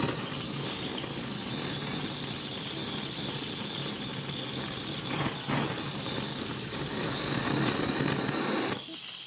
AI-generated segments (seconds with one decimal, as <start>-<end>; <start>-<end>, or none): 4.1-4.6; 6.3-7.4